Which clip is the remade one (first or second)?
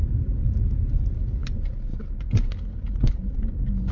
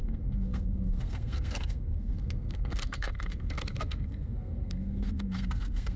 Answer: second